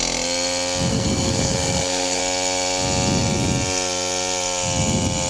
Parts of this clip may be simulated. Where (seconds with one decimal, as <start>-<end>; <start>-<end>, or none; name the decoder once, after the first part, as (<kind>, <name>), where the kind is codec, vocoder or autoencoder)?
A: 0.9-2.2 (codec, SNAC)